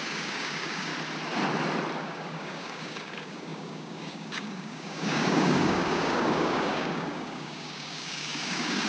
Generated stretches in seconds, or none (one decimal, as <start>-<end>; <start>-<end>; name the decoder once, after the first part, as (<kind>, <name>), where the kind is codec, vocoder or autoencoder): 0.0-0.9 (codec, DAC); 2.0-8.9